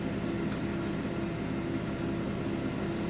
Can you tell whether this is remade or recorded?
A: recorded